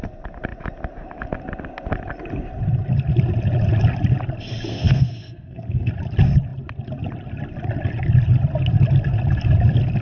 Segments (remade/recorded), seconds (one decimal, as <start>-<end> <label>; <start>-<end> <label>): 0.0-4.7 recorded; 4.7-5.9 remade; 5.9-10.0 recorded